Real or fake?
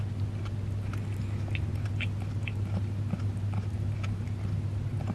real